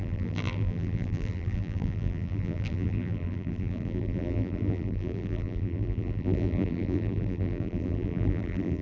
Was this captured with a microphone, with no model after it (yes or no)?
no